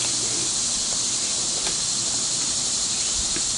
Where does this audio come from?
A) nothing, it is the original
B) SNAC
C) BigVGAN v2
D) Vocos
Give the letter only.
A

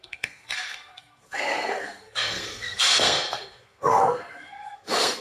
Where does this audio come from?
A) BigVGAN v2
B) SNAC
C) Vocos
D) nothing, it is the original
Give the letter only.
B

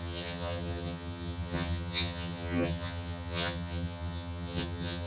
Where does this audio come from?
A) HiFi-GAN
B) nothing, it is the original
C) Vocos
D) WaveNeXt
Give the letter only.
A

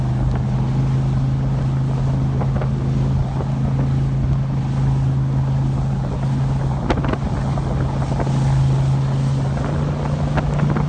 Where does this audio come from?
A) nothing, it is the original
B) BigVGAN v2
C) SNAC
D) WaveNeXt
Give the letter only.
A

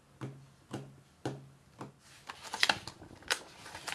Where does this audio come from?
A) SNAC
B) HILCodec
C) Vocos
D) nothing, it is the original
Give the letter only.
D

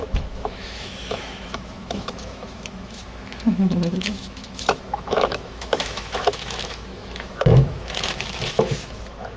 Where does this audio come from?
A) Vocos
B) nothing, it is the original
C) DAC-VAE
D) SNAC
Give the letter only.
C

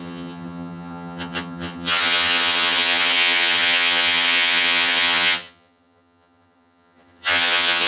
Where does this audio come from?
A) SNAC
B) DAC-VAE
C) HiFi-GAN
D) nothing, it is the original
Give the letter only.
C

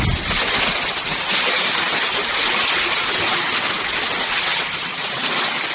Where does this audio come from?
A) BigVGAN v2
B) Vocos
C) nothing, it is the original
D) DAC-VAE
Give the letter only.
C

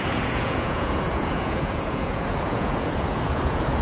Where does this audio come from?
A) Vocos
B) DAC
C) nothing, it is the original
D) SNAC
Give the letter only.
A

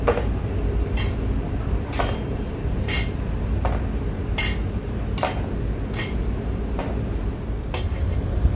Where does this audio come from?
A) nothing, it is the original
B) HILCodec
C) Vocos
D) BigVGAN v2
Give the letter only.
A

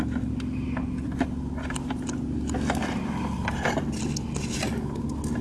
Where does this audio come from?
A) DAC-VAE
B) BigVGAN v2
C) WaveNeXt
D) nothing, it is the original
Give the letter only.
D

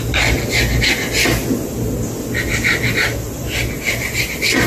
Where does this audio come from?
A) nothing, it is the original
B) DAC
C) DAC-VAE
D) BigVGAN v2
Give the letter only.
A